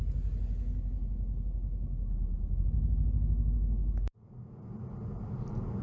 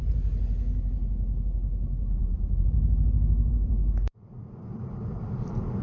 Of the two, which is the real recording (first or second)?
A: first